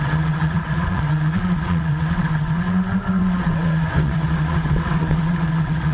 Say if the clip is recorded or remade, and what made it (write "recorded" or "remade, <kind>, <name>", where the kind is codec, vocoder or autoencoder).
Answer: remade, vocoder, WaveNeXt